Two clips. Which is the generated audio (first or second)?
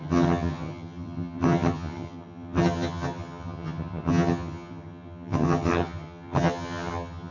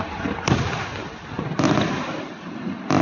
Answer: first